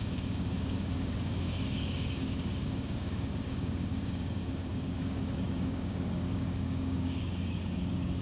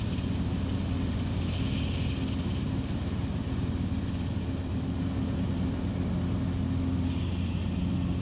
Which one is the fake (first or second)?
first